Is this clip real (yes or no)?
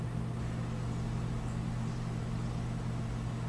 yes